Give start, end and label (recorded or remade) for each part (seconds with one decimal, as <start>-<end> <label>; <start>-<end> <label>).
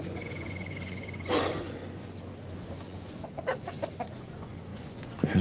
0.0-5.4 remade